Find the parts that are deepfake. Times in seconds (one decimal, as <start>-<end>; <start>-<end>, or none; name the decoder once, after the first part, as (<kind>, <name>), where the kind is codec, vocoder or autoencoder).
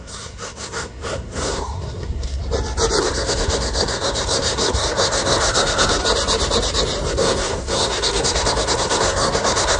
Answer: 0.0-2.4 (codec, SNAC); 3.0-6.0; 7.1-9.8